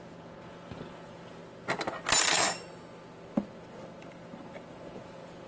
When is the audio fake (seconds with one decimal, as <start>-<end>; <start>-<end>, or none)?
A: 0.0-1.4; 4.7-5.5